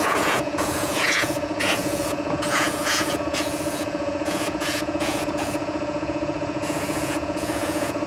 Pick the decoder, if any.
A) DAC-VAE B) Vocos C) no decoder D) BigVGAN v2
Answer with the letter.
B